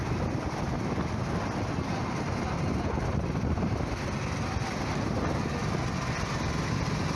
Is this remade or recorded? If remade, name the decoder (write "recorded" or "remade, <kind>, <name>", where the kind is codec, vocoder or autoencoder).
recorded